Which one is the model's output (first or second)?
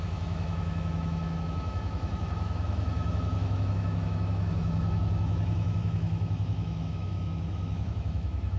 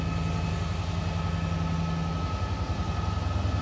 first